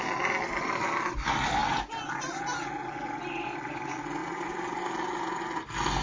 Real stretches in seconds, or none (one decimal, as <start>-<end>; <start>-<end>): 0.0-6.0